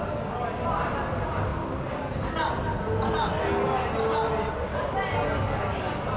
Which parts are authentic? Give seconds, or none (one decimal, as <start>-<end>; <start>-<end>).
0.0-6.2